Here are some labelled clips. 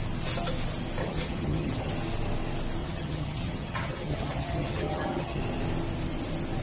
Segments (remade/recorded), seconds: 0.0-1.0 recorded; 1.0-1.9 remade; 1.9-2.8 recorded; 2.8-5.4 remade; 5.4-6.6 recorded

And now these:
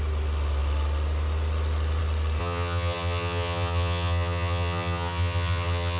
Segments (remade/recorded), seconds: 0.0-2.4 recorded; 2.4-6.0 remade

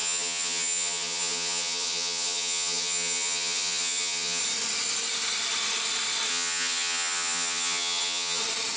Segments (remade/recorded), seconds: 0.0-4.4 remade; 4.4-6.3 recorded; 6.3-8.4 remade; 8.4-8.8 recorded

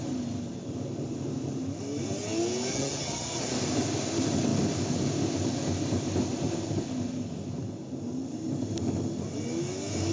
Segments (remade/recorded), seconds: 0.0-2.7 recorded; 2.7-3.5 remade; 3.5-10.1 recorded

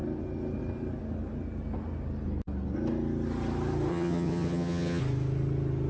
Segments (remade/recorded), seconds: 0.0-3.9 recorded; 3.9-5.0 remade; 5.0-5.9 recorded

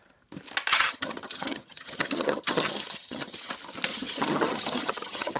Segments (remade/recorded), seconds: 0.0-0.7 recorded; 0.7-3.5 remade; 3.5-3.9 recorded; 3.9-5.4 remade